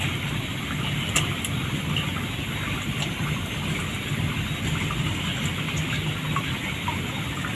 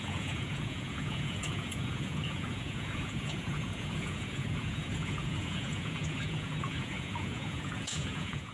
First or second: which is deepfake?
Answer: second